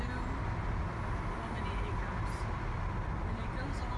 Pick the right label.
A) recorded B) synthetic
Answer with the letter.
A